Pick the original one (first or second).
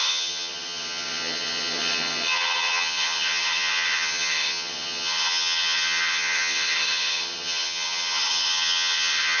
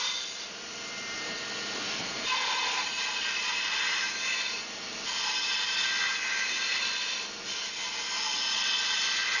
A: second